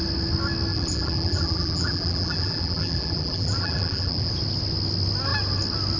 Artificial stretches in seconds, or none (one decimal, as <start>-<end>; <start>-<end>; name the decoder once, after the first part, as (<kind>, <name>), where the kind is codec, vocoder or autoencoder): 0.7-4.3 (vocoder, BigVGAN v2)